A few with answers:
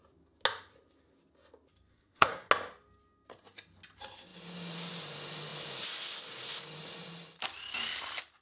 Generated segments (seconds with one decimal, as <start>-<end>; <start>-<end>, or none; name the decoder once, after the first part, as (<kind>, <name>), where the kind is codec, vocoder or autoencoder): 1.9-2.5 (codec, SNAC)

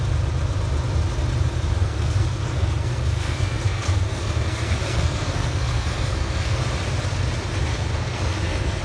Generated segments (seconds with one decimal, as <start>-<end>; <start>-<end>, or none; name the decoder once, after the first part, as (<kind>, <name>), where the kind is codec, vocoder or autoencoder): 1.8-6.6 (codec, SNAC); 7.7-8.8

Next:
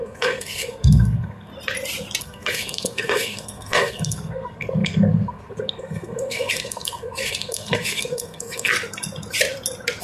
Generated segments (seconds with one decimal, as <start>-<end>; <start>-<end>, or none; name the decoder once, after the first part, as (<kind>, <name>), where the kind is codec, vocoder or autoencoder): 0.0-1.5 (codec, SNAC); 2.2-8.7

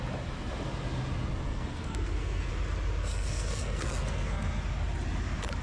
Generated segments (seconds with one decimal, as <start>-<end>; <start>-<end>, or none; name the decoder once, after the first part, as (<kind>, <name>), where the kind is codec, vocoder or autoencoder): 1.5-2.5 (codec, SNAC); 3.0-4.6

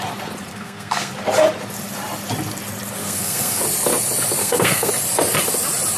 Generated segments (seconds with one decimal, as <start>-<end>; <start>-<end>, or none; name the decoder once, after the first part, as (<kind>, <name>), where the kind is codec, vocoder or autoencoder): 0.5-1.1 (codec, SNAC); 3.0-3.6; 4.4-4.9